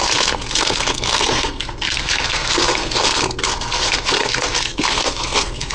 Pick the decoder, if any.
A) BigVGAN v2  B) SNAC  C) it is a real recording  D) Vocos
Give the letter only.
B